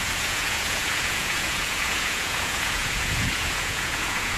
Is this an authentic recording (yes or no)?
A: no